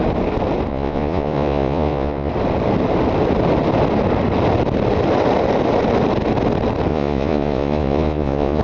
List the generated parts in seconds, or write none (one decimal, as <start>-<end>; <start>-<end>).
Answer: 0.7-2.3; 6.9-8.6